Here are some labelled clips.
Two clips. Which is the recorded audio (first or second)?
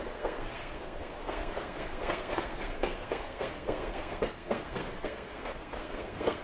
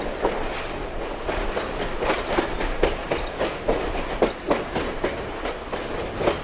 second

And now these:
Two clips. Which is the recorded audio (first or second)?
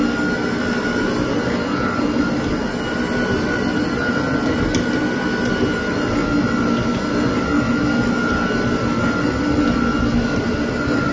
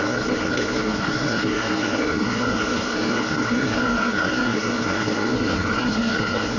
first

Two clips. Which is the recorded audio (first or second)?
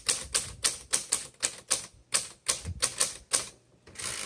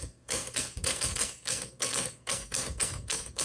first